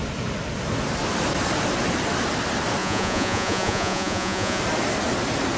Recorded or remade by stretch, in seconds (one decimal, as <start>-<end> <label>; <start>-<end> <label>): 0.0-2.8 recorded; 2.8-4.6 remade; 4.6-5.6 recorded